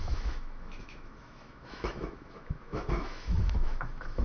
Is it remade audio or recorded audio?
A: remade